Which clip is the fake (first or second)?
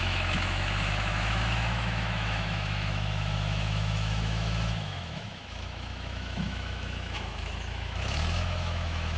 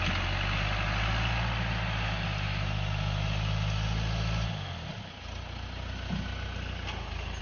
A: first